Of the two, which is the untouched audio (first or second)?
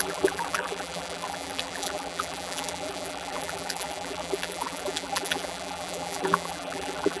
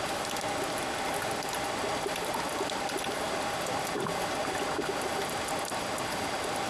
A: second